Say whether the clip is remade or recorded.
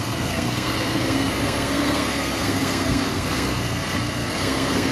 remade